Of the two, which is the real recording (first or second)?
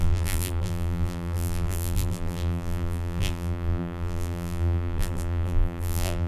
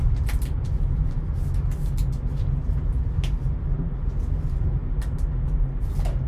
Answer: second